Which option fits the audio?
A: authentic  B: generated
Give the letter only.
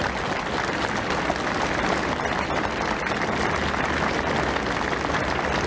A